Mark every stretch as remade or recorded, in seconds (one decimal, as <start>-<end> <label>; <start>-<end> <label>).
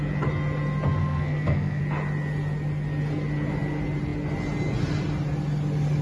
0.0-1.0 recorded; 1.0-1.8 remade; 1.8-6.0 recorded